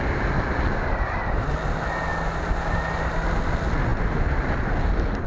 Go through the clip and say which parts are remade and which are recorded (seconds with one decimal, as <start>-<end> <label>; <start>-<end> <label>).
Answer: 0.0-5.3 recorded